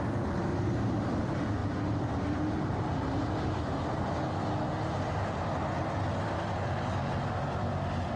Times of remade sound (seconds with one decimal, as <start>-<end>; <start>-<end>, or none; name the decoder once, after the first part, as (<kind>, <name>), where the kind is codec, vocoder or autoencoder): 0.5-1.0 (vocoder, BigVGAN v2)

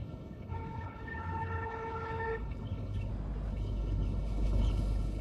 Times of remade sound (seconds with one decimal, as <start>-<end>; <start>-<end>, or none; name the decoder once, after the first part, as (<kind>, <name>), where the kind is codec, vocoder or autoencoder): 0.0-3.1 (codec, HILCodec); 3.5-5.2

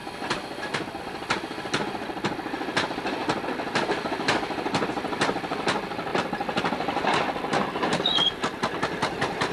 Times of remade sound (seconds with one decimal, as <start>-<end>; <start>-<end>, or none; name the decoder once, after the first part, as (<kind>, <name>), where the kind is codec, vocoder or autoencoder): 3.2-4.1 (vocoder, BigVGAN v2); 6.1-8.3